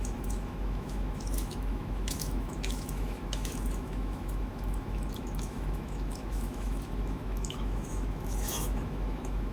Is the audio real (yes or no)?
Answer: no